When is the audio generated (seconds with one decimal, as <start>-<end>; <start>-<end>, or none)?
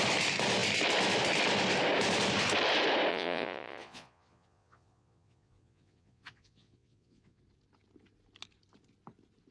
3.1-7.4